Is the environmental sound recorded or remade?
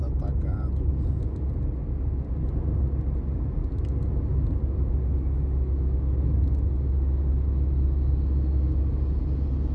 recorded